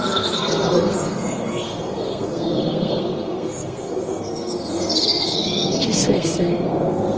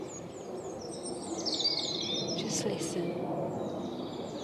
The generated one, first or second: first